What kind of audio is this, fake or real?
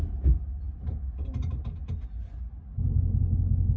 real